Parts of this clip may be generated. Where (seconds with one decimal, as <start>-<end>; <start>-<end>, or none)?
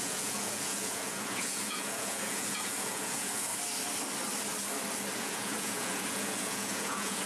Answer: 0.0-3.5; 5.2-7.3